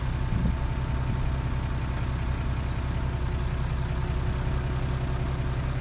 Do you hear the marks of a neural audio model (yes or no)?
no